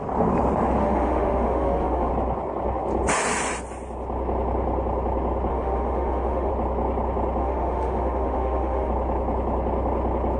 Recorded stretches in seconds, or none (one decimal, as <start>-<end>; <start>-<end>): 0.0-0.8; 2.1-5.5; 6.5-7.4; 8.9-10.4